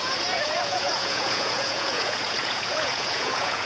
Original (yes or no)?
no